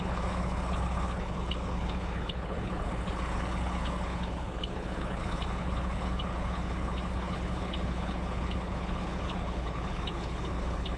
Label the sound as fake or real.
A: fake